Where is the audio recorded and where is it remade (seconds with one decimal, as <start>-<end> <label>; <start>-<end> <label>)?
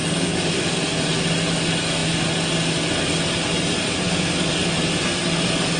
0.0-5.8 recorded